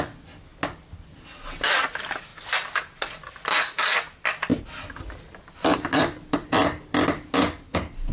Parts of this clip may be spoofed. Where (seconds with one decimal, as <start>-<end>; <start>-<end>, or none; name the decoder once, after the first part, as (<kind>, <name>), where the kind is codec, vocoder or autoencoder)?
none

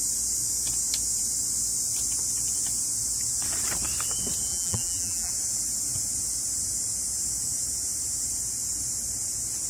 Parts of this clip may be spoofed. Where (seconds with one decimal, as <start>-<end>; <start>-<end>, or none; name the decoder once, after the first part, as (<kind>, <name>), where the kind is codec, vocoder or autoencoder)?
4.5-5.3 (vocoder, BigVGAN v2)

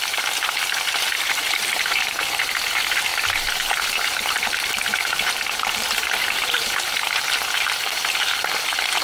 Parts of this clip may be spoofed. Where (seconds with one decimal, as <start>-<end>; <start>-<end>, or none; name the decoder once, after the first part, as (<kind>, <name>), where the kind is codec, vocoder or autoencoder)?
0.0-9.0 (vocoder, BigVGAN v2)

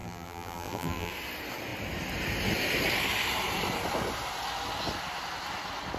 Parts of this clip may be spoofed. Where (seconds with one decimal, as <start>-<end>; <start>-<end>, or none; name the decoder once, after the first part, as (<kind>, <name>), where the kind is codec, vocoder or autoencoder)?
0.0-1.1 (vocoder, BigVGAN v2)